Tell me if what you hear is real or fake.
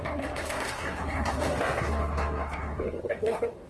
fake